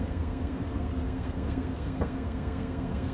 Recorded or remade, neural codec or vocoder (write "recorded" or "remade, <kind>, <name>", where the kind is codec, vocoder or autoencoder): remade, codec, SNAC